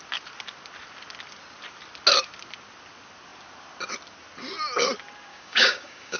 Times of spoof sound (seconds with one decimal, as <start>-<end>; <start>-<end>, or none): 5.3-6.2